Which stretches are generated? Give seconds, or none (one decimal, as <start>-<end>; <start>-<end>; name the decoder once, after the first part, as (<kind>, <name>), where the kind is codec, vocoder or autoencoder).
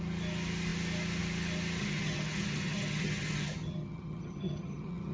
1.8-5.1 (vocoder, HiFi-GAN)